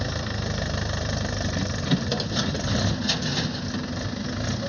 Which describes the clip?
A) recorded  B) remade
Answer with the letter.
A